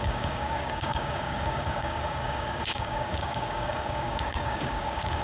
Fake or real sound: fake